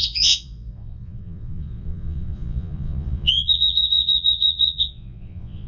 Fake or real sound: fake